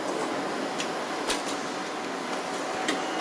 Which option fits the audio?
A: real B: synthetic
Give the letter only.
A